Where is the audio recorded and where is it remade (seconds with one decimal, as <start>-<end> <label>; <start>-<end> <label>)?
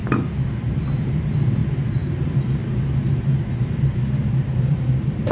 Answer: 0.0-0.5 recorded; 0.5-1.6 remade; 1.6-2.1 recorded; 2.1-2.6 remade; 2.6-3.8 recorded; 3.8-5.3 remade